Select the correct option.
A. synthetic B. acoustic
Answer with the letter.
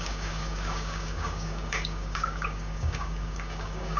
A